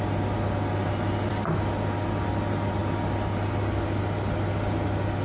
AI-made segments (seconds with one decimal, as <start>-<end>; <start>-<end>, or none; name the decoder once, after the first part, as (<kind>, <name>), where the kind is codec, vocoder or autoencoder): none